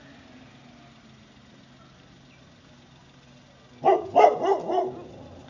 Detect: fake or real real